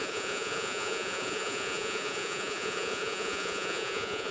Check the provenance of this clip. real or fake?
fake